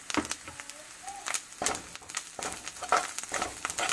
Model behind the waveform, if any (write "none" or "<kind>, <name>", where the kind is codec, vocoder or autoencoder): none